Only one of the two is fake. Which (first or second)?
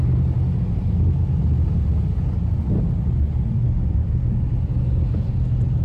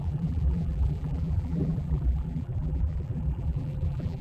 second